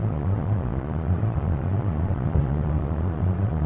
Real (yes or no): no